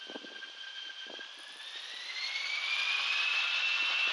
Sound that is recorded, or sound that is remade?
remade